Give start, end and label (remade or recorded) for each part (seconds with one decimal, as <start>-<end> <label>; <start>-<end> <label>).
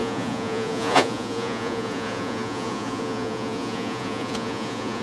0.0-5.0 remade